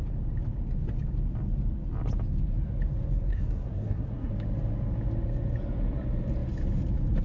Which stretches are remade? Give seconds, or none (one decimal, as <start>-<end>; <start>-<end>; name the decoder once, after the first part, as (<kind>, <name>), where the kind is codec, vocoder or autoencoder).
3.3-4.3 (codec, SNAC)